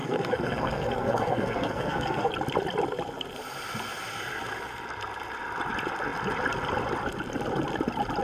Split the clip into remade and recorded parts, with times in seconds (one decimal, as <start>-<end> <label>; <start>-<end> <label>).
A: 0.0-2.3 remade; 2.3-8.2 recorded